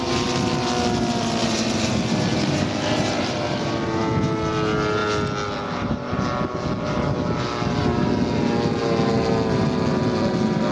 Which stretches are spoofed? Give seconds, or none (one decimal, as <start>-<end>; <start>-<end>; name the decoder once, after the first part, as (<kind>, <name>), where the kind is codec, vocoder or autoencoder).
1.4-4.0 (vocoder, BigVGAN v2)